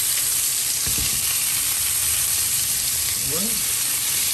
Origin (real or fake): fake